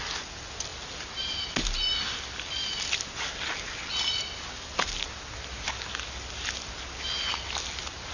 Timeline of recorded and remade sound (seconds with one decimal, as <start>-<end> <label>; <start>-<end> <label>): 0.0-8.1 recorded